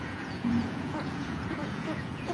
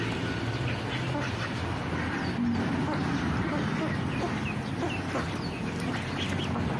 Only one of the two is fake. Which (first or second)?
first